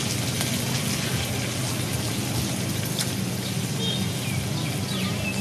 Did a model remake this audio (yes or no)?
no